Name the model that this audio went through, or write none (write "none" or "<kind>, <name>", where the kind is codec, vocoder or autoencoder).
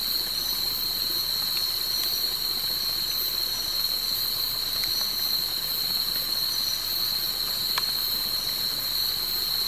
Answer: none